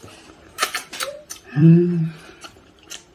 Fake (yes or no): yes